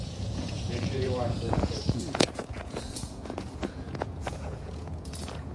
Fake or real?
fake